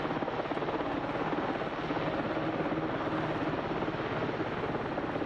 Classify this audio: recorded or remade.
recorded